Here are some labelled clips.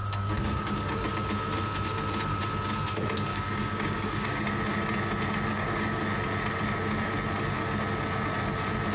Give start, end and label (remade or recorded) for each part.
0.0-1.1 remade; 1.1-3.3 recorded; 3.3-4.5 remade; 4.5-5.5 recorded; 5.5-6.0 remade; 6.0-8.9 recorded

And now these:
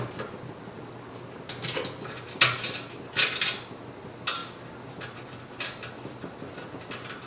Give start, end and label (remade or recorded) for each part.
0.0-7.3 recorded